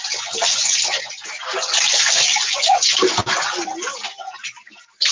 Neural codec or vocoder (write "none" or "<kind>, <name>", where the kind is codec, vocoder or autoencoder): none